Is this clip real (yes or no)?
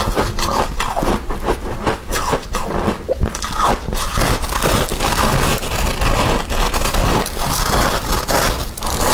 yes